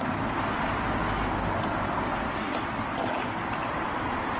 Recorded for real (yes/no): yes